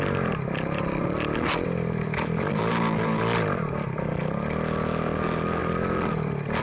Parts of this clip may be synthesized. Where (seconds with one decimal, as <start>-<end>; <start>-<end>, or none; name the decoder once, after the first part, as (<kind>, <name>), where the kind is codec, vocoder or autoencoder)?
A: none